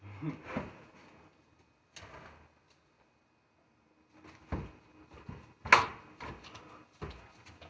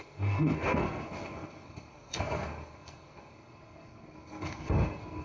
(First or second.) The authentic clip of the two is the first